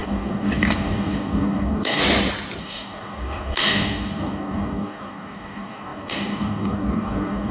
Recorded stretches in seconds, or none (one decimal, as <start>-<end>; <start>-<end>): 2.0-2.6